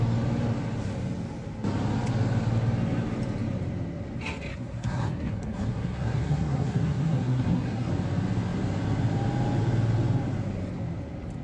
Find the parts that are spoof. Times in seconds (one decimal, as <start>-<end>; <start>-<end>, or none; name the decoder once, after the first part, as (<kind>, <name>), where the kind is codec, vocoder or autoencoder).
4.5-7.9 (codec, SNAC)